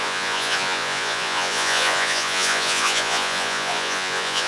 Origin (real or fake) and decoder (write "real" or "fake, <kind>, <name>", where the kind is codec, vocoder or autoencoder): fake, vocoder, Vocos